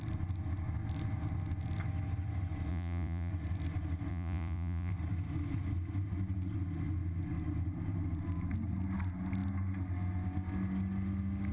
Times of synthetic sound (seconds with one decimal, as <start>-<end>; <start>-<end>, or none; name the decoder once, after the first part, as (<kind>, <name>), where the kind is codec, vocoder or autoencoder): 2.7-3.3 (vocoder, Vocos); 4.1-4.9